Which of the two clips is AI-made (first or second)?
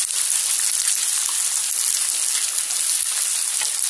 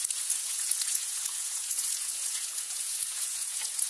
second